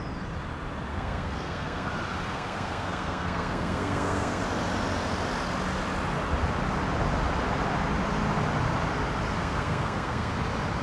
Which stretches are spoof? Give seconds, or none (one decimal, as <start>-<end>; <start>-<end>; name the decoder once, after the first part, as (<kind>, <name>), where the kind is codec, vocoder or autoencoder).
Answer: 0.9-1.9 (codec, SNAC); 2.3-4.4; 9.4-10.3